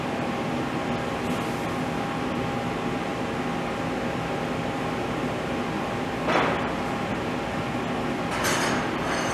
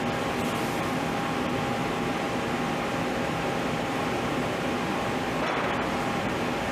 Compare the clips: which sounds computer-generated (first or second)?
second